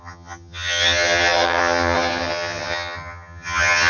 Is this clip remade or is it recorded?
remade